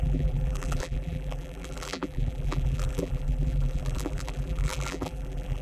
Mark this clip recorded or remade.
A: remade